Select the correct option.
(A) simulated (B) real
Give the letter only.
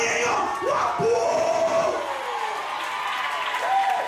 B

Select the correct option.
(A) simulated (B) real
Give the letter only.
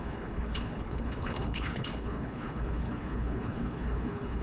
A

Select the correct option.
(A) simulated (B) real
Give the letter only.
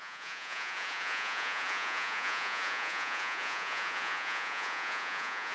A